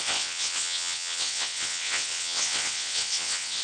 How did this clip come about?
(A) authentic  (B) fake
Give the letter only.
B